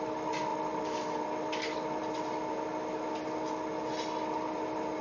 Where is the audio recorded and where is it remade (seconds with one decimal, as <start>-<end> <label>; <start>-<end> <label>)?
0.0-5.0 recorded